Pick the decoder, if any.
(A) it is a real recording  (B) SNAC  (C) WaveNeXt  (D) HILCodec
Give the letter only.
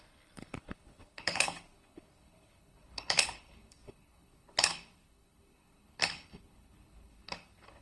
D